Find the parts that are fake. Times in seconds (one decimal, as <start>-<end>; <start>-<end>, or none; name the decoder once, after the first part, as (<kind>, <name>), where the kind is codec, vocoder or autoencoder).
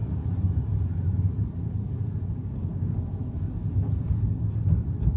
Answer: 2.4-3.2 (codec, DAC)